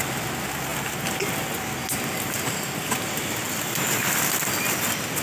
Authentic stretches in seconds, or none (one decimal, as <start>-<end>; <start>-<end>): 0.0-5.2